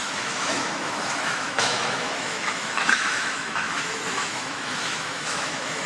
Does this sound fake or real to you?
fake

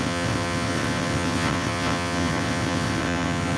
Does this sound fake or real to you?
fake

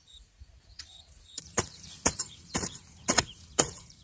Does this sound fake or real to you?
fake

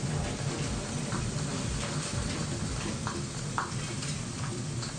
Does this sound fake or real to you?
fake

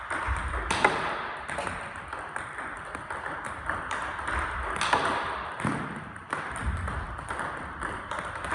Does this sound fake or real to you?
real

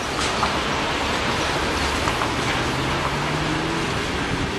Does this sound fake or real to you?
real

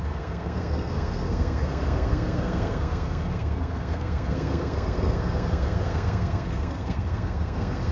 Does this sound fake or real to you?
fake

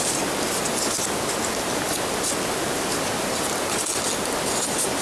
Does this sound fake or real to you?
real